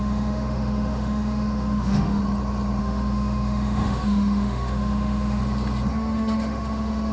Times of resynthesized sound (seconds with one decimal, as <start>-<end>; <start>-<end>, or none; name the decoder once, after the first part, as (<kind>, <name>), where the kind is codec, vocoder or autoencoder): 0.0-2.2 (autoencoder, DAC-VAE); 2.8-5.4; 5.9-7.1